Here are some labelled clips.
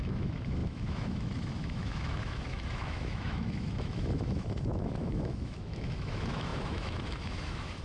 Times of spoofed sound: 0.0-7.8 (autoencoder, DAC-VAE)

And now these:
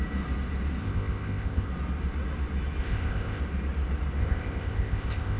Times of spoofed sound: 0.8-1.7 (codec, ZipCodec); 2.8-3.4; 4.2-5.4

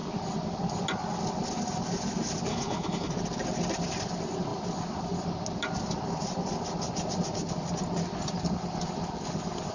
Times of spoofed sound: 2.5-3.1 (codec, HILCodec)

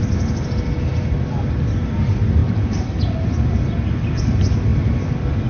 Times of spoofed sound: 2.4-3.0 (vocoder, BigVGAN v2); 4.7-5.5